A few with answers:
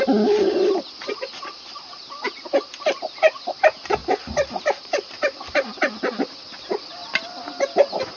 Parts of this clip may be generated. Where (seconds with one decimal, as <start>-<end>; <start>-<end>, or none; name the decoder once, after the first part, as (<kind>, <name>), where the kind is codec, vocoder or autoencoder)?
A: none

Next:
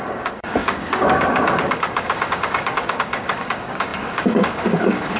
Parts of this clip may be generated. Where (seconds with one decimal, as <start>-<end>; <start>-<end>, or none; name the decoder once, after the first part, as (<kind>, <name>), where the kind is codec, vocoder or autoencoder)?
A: 0.0-5.2 (codec, DAC)

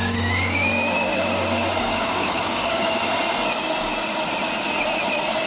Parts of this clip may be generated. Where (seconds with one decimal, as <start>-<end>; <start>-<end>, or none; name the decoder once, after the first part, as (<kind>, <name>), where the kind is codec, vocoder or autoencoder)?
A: 0.0-0.7 (codec, DAC); 1.8-3.0

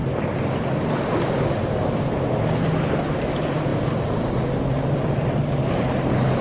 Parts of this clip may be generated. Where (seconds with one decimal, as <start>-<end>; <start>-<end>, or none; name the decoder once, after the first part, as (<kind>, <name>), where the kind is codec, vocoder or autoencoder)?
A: none

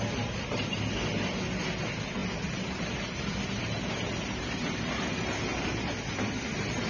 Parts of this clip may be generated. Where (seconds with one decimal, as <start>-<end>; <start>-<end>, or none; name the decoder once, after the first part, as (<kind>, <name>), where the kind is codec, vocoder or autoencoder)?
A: none

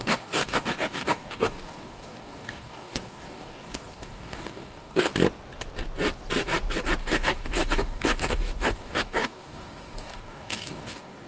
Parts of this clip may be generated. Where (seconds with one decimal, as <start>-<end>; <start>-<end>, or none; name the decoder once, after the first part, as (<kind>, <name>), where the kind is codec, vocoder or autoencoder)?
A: 0.0-5.1 (codec, DAC); 7.0-11.3